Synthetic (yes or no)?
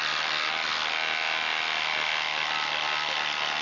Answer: no